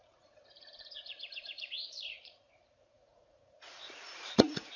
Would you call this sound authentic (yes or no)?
no